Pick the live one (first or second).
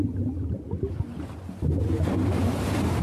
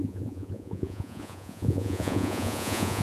first